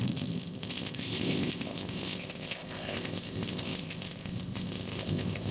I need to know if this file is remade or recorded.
remade